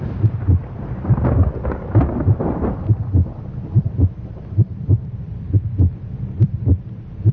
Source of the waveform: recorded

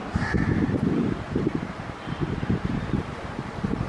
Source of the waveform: remade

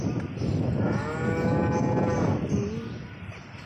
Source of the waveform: recorded